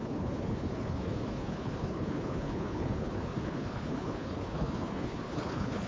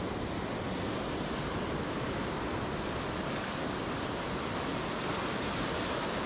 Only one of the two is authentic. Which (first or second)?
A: second